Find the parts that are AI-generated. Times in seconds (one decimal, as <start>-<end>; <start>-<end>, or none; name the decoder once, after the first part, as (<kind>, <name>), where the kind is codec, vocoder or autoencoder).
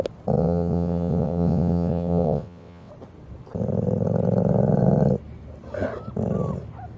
0.4-2.9 (vocoder, WaveNeXt)